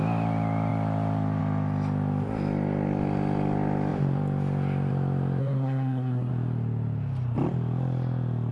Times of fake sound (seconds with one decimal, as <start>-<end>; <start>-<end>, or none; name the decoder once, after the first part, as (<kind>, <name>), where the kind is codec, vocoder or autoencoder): 5.4-6.3 (codec, SNAC)